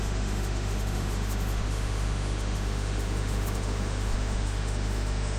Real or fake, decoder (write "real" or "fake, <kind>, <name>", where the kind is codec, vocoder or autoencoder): fake, autoencoder, DAC-VAE